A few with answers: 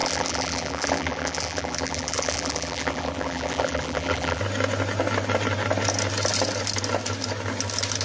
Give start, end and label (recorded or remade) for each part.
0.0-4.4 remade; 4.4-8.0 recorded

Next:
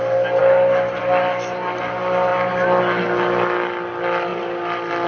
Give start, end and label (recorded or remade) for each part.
0.0-5.1 recorded

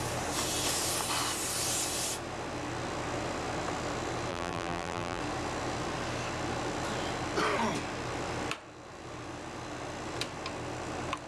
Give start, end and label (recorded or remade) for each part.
0.0-4.3 recorded; 4.3-5.2 remade; 5.2-11.3 recorded

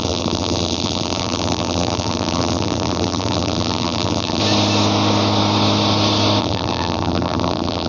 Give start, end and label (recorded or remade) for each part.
0.0-4.4 remade; 4.4-6.4 recorded; 6.4-7.9 remade

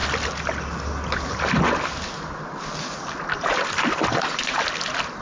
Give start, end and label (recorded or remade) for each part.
0.0-5.2 recorded